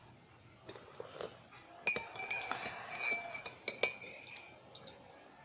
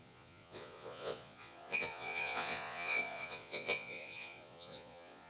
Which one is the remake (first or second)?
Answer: second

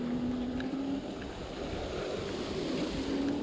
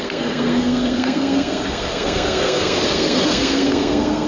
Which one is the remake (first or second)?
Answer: second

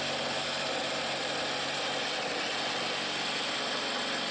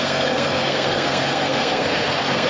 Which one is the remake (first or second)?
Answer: second